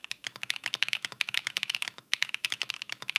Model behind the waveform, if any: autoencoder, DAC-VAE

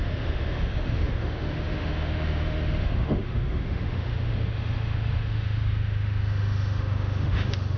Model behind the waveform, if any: autoencoder, DAC-VAE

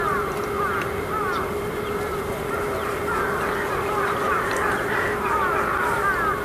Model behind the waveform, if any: none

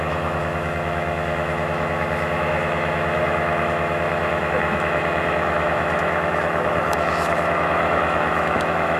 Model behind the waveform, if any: autoencoder, DAC-VAE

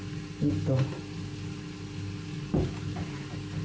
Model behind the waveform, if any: none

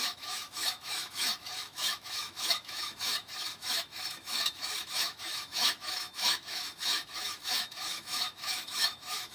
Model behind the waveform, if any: autoencoder, DAC-VAE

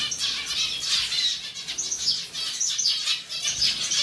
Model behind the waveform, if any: none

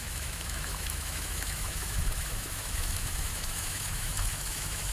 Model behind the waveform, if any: autoencoder, DAC-VAE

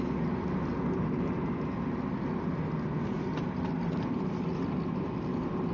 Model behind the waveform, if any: none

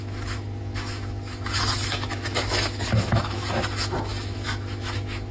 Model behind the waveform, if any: autoencoder, DAC-VAE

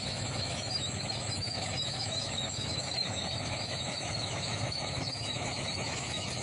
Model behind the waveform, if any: autoencoder, DAC-VAE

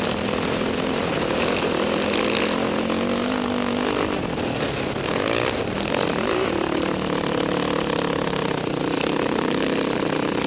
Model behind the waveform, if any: none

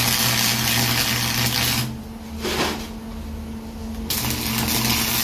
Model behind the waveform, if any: none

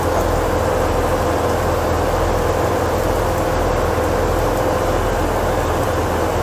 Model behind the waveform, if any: none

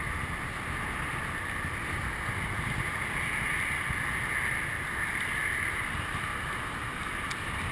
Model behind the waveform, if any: none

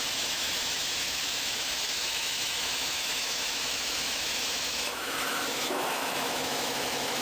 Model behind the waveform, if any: autoencoder, DAC-VAE